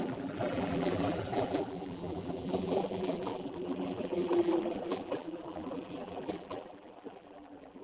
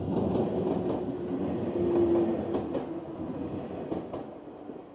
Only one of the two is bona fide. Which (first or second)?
second